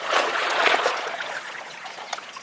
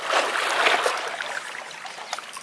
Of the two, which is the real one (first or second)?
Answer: second